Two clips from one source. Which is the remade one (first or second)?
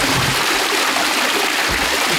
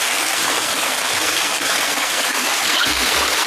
second